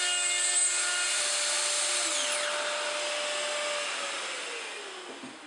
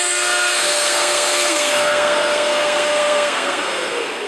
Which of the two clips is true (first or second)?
first